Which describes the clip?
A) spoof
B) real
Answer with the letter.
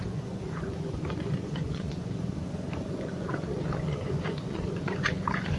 A